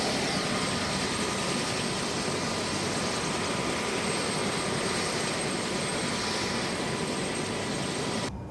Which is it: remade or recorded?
recorded